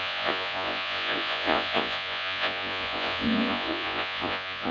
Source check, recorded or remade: remade